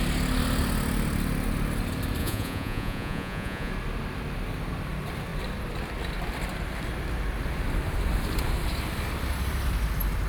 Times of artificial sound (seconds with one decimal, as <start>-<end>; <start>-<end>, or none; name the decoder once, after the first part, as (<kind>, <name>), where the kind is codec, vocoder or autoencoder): 2.2-3.7 (vocoder, Vocos)